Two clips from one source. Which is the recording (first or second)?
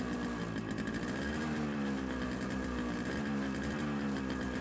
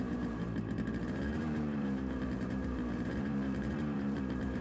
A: first